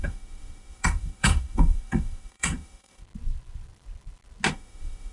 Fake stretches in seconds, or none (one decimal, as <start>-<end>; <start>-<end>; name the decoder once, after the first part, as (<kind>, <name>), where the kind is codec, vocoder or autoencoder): 0.0-3.0 (autoencoder, DAC-VAE); 4.5-5.1